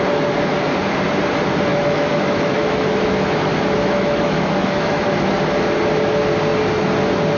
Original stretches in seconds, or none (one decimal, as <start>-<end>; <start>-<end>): 0.0-1.7; 5.3-7.4